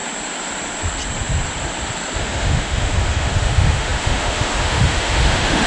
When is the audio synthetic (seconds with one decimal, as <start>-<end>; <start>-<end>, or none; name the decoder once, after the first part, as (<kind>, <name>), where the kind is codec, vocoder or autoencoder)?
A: 2.2-5.7 (autoencoder, DAC-VAE)